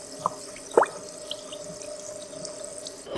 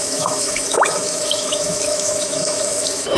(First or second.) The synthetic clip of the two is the second